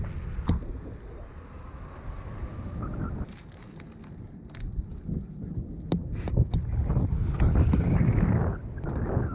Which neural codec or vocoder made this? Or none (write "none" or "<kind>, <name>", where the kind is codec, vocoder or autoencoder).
none